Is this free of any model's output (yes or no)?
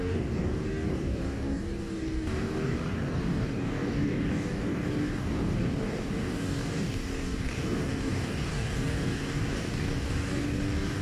no